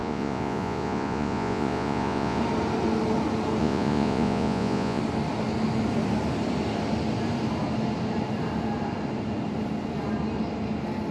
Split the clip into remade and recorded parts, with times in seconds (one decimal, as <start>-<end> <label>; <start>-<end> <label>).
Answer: 0.0-2.4 remade; 2.4-3.6 recorded; 3.6-5.0 remade; 5.0-11.1 recorded